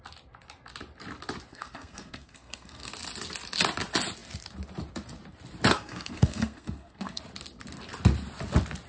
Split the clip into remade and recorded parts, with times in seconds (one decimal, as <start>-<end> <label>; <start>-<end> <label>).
0.0-1.5 recorded; 1.5-2.9 remade; 2.9-5.7 recorded; 5.7-7.2 remade; 7.2-8.9 recorded